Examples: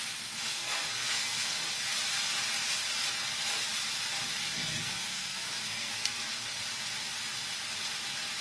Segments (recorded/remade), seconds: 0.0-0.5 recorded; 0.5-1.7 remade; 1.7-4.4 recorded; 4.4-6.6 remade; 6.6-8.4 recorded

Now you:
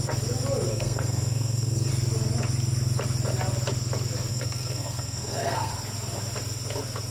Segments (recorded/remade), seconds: 0.0-0.7 recorded; 0.7-1.9 remade; 1.9-4.3 recorded; 4.3-5.7 remade; 5.7-7.1 recorded

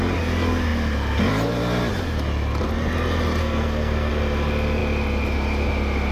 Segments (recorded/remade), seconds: 0.0-3.4 recorded; 3.4-4.1 remade; 4.1-6.1 recorded

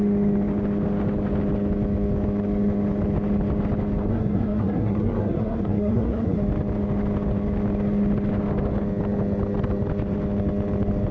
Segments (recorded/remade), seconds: 0.0-4.1 recorded; 4.1-6.4 remade; 6.4-11.1 recorded

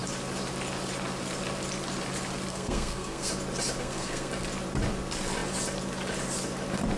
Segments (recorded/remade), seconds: 0.0-2.5 recorded; 2.5-3.3 remade; 3.3-3.8 recorded; 3.8-4.3 remade; 4.3-7.0 recorded

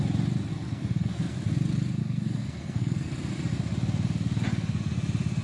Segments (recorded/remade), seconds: 0.0-0.5 recorded; 0.5-1.4 remade; 1.4-2.0 recorded; 2.0-3.1 remade; 3.1-5.4 recorded

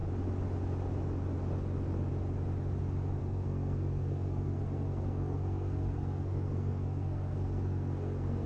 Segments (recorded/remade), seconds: 0.0-3.2 recorded; 3.2-8.5 remade